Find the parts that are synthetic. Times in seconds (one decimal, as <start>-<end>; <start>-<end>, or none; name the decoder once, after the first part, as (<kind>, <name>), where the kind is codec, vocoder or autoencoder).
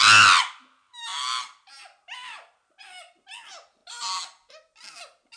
none